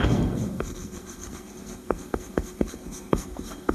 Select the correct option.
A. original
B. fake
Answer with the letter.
B